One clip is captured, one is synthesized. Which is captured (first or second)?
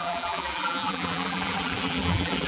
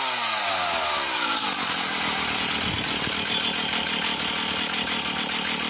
second